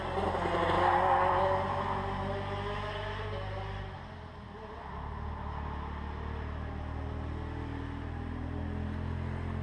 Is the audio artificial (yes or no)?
no